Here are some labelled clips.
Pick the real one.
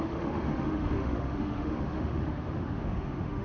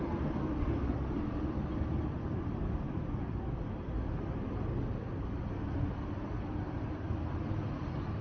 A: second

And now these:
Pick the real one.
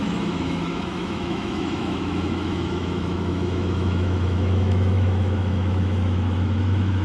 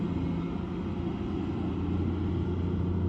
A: second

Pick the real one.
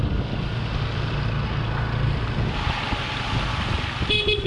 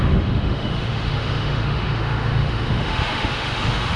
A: first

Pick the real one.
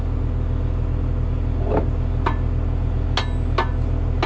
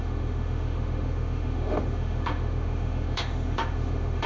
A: first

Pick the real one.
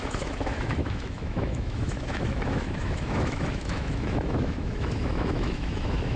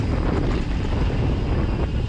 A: second